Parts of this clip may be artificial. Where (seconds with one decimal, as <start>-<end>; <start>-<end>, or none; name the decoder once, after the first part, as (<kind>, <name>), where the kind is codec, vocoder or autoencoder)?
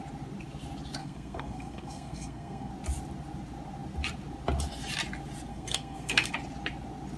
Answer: 1.0-2.7 (codec, SNAC); 5.5-6.3